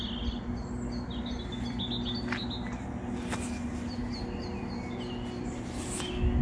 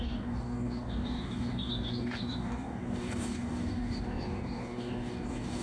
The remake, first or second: second